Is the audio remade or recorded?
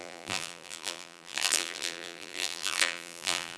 remade